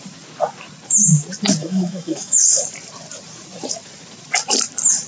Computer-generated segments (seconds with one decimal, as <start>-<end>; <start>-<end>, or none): 1.6-2.6